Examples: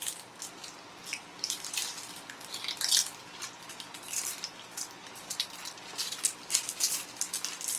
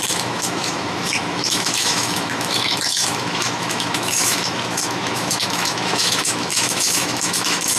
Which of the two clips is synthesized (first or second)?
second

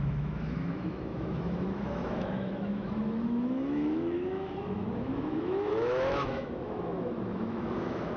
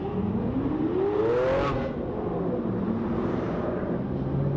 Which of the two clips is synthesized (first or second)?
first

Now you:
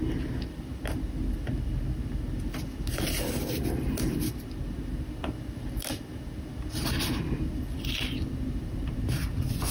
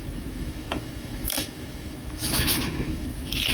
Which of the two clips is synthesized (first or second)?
second